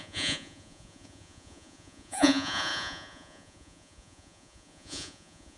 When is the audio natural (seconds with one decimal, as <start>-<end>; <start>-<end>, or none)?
none